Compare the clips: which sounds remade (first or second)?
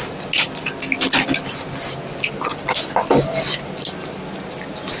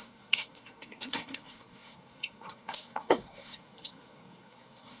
second